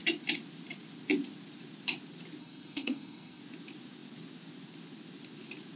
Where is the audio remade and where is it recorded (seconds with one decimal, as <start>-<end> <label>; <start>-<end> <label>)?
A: 0.0-2.4 recorded; 2.4-3.4 remade; 3.4-5.8 recorded